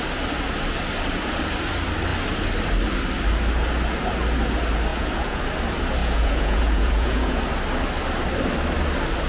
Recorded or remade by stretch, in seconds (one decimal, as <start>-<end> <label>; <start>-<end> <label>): 0.0-4.9 recorded; 4.9-5.4 remade; 5.4-6.0 recorded; 6.0-7.4 remade; 7.4-9.3 recorded